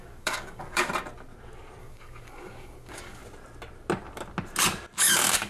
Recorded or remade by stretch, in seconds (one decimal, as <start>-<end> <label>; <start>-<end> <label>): 0.0-0.9 remade; 0.9-1.8 recorded; 1.8-3.2 remade; 3.2-5.0 recorded; 5.0-5.5 remade